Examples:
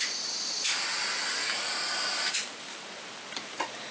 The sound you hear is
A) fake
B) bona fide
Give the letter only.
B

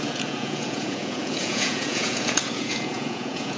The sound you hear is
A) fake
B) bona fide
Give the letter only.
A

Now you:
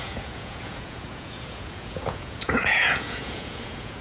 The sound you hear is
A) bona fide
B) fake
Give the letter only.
B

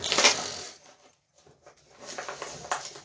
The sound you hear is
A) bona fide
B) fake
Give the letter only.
A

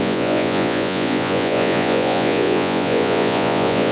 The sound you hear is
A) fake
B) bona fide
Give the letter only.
A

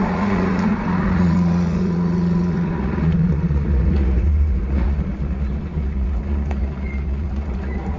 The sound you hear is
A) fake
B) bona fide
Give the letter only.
A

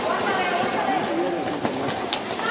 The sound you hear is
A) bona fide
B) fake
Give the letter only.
A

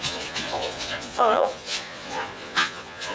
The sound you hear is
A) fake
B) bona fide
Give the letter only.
A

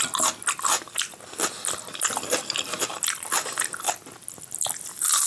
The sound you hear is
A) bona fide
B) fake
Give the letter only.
A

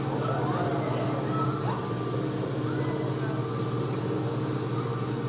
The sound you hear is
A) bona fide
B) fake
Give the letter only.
A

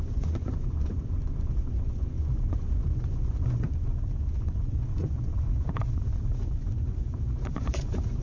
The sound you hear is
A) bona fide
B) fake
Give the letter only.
B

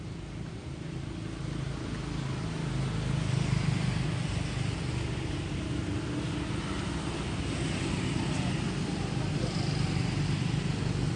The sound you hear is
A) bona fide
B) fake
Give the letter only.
A